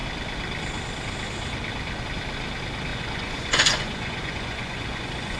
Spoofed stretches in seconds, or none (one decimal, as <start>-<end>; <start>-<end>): 2.9-5.4